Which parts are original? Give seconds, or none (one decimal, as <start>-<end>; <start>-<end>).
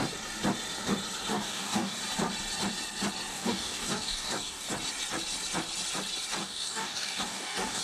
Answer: 0.0-1.3; 2.0-3.3; 4.7-6.4